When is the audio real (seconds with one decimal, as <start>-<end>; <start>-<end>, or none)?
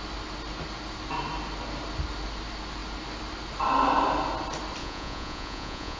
0.0-4.8